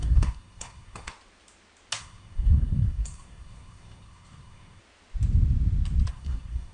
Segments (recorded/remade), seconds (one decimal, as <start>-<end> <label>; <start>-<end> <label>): 0.0-1.1 remade; 1.1-2.0 recorded; 2.0-4.8 remade; 4.8-6.1 recorded; 6.1-6.7 remade